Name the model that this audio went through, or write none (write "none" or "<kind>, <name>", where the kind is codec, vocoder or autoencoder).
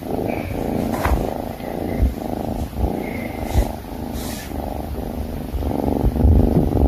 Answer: none